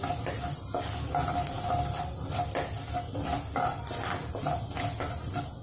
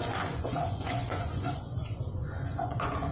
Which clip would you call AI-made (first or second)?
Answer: second